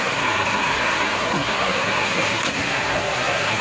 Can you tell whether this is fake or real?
fake